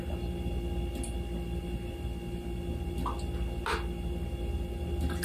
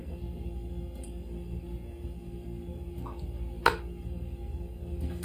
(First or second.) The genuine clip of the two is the first